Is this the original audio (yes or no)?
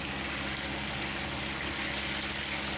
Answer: yes